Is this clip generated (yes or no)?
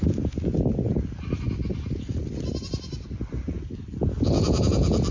no